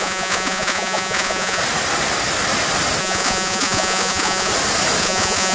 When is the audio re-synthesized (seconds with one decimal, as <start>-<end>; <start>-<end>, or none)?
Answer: 0.0-1.6; 3.0-4.5; 5.0-5.5